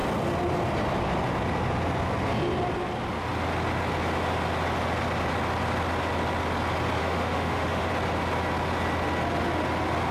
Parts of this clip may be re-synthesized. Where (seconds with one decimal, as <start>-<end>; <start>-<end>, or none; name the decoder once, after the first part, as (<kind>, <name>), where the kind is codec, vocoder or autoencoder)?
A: 7.0-7.9 (autoencoder, DAC-VAE)

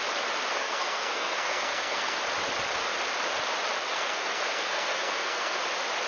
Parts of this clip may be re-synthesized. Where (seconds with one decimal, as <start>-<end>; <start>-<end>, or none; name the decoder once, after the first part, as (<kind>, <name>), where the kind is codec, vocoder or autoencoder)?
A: 0.5-2.2 (codec, SNAC); 3.9-5.6

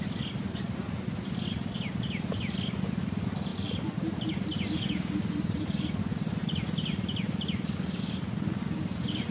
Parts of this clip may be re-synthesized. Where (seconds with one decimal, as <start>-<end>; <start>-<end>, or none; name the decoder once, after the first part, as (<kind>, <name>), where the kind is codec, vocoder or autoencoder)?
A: none

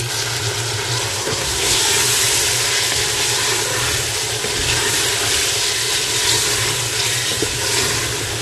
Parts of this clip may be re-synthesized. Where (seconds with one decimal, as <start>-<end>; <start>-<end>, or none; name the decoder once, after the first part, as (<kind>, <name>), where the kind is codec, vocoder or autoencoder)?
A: 1.1-1.8 (codec, SNAC)